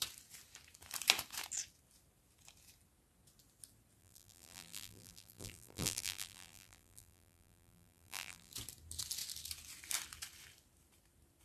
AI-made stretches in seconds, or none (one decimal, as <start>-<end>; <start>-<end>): 4.0-8.5